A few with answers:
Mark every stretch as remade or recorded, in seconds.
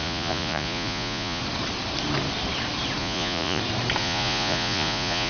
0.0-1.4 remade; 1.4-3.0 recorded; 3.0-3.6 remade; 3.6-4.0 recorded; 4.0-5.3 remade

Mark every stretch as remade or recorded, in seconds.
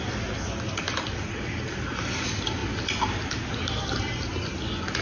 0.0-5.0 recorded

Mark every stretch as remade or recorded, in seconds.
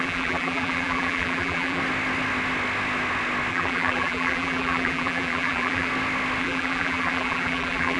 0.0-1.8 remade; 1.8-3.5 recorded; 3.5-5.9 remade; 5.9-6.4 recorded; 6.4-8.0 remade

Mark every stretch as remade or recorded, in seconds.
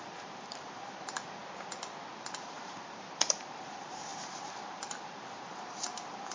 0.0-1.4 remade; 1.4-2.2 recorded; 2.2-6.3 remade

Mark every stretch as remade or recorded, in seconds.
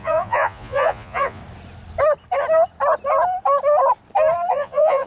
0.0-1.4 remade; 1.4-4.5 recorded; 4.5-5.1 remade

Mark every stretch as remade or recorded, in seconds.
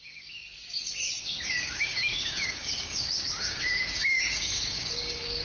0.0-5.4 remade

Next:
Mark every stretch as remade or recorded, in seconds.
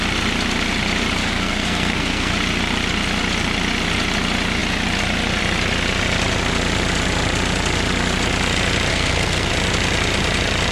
0.0-1.2 recorded; 1.2-2.3 remade; 2.3-8.9 recorded; 8.9-9.5 remade; 9.5-10.7 recorded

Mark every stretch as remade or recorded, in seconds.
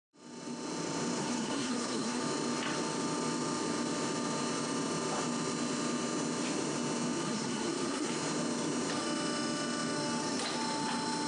0.0-1.2 recorded; 1.2-2.2 remade; 2.2-7.2 recorded; 7.2-8.1 remade; 8.1-11.3 recorded